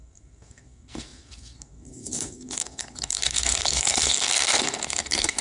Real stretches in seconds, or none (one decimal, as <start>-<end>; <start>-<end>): none